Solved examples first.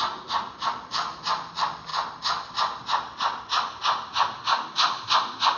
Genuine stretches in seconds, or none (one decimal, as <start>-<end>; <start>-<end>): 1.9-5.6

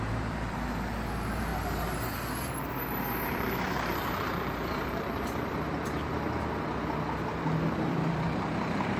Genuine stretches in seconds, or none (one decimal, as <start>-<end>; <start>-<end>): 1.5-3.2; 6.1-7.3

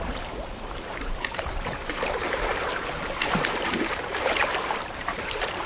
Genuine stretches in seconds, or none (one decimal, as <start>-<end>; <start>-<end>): 4.4-5.0

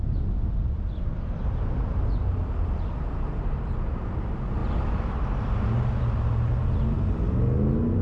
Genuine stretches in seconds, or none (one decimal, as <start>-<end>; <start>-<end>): 0.0-8.0